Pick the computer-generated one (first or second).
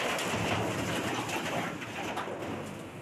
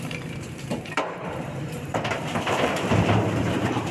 second